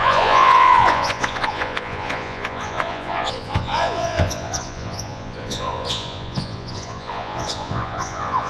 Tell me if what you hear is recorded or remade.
remade